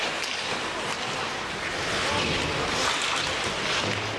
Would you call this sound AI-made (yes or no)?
no